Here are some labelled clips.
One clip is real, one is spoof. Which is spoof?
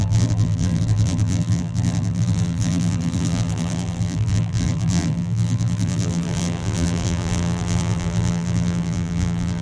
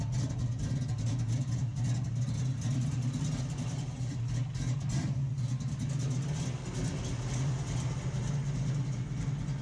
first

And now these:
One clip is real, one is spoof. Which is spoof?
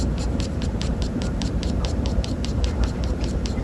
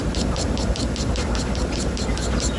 first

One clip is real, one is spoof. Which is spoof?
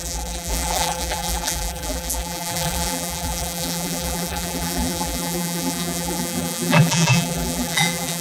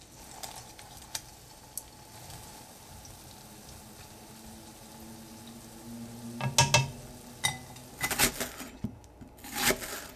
first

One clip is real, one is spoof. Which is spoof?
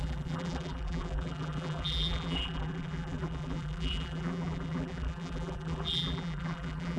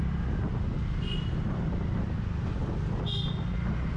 first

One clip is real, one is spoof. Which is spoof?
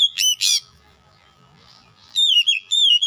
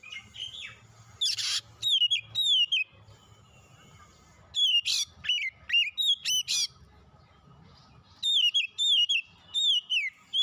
first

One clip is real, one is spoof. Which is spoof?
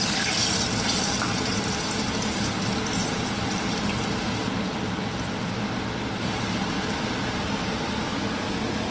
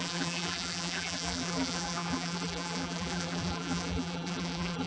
second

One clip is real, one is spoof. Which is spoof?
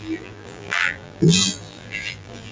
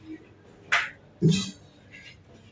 first